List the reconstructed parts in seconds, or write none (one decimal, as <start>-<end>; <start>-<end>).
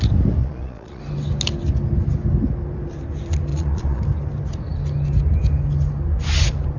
0.4-1.0; 3.5-4.0